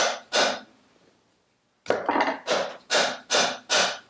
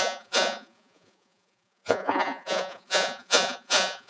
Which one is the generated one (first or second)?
second